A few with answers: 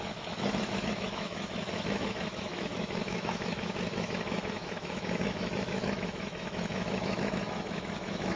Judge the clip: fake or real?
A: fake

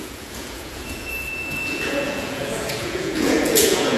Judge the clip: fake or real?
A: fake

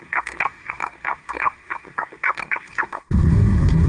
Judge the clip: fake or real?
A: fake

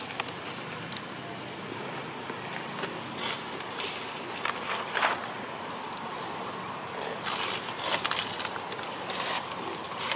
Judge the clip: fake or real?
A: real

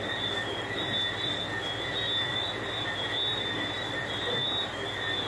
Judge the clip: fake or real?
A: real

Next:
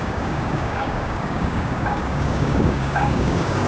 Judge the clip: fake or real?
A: fake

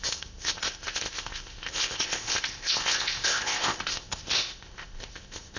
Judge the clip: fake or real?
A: fake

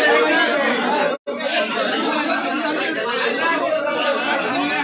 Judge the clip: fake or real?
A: real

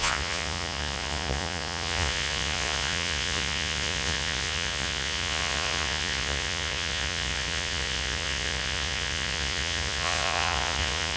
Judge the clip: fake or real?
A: fake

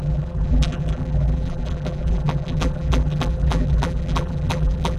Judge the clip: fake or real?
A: fake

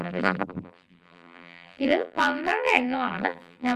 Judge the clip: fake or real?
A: fake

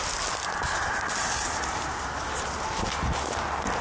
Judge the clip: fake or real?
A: real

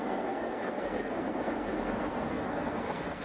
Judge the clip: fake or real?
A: fake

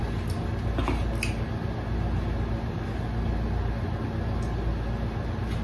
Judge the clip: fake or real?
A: real